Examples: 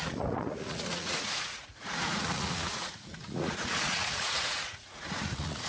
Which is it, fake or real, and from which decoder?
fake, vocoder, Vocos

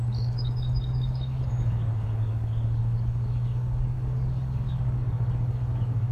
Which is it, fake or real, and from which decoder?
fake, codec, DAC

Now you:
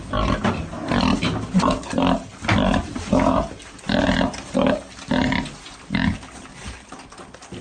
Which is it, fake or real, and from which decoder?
real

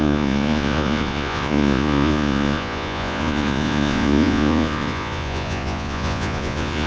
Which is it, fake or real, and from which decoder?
fake, vocoder, Vocos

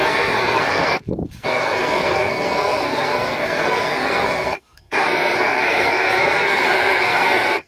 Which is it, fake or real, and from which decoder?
fake, codec, SNAC